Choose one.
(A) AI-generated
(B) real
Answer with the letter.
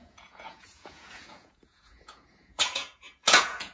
A